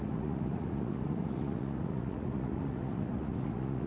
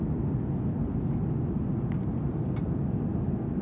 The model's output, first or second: first